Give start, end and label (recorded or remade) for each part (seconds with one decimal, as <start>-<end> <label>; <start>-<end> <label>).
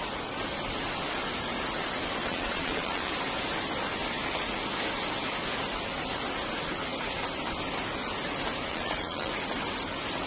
0.0-2.2 recorded; 2.2-3.1 remade; 3.1-8.7 recorded; 8.7-9.3 remade; 9.3-10.3 recorded